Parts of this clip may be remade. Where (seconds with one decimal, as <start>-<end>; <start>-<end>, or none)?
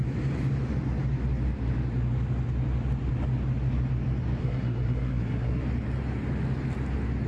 4.4-5.6